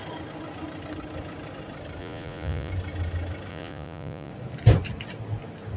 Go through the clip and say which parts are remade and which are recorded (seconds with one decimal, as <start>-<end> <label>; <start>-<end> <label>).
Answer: 0.0-2.0 recorded; 2.0-2.7 remade; 2.7-3.5 recorded; 3.5-4.3 remade; 4.3-5.8 recorded